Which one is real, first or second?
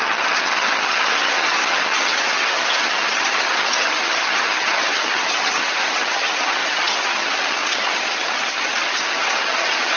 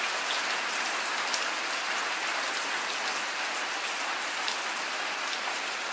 second